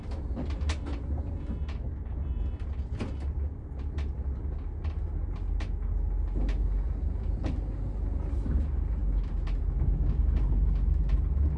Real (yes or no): yes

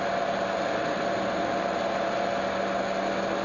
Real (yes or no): yes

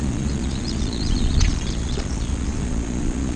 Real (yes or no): no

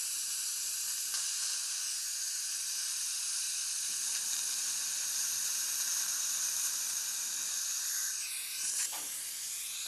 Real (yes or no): yes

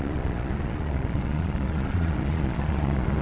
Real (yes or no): no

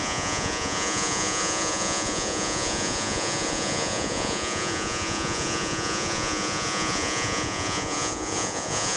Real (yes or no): no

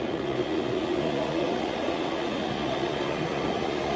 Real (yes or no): no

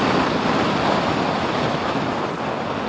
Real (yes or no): yes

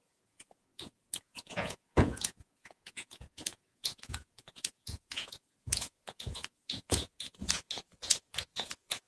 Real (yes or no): no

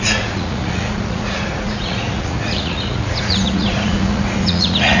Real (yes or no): no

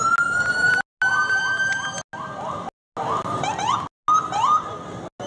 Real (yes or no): yes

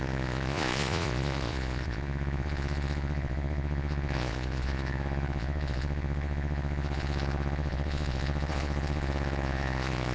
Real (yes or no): no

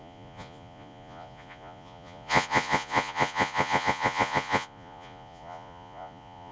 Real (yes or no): no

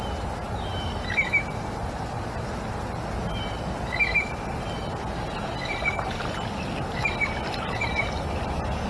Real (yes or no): yes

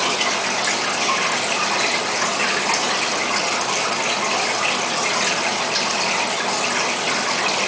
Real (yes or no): yes